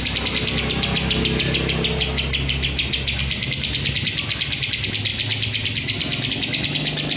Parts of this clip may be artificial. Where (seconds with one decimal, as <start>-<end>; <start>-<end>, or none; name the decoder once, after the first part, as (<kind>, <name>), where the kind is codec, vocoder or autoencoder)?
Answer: none